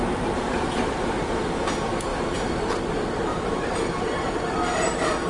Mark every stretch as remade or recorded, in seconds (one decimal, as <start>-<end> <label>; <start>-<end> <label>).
0.0-1.7 remade; 1.7-2.1 recorded; 2.1-2.6 remade; 2.6-3.3 recorded; 3.3-4.6 remade; 4.6-5.3 recorded